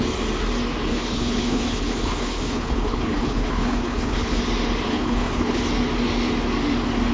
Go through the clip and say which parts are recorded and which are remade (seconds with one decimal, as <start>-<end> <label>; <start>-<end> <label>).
0.0-0.9 recorded; 0.9-4.4 remade; 4.4-4.9 recorded; 4.9-5.6 remade; 5.6-7.1 recorded